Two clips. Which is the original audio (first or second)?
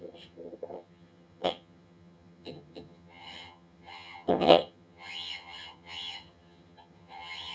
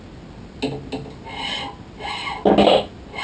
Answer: second